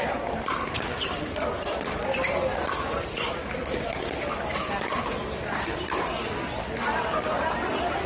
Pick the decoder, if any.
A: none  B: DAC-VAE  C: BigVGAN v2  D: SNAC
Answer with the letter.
A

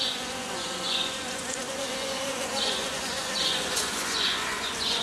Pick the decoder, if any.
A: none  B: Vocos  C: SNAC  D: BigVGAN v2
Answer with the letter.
B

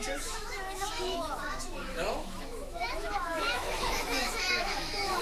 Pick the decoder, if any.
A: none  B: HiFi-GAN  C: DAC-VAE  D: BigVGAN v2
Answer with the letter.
C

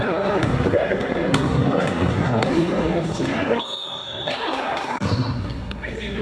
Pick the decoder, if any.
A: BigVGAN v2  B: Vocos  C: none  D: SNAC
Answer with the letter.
D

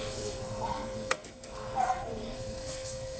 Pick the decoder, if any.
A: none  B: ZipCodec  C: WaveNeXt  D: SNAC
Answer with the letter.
D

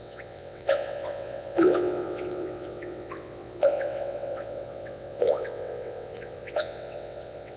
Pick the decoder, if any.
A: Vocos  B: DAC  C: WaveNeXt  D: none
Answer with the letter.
C